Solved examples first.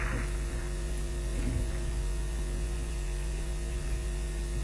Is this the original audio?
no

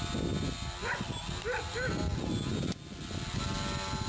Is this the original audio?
yes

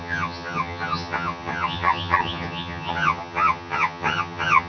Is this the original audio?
no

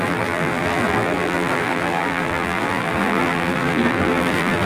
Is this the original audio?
no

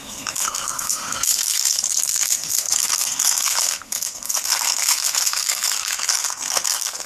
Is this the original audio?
no